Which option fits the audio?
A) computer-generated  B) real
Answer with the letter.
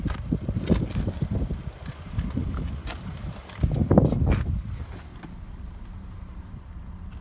B